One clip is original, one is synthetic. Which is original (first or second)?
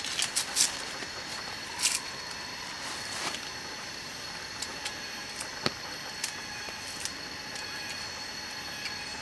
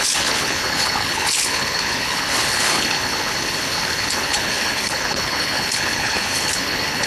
first